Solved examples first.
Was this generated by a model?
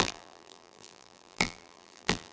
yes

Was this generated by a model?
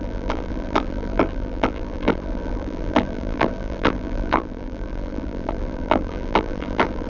yes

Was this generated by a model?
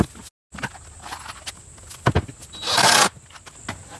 no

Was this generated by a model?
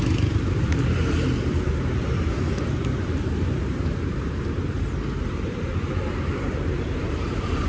yes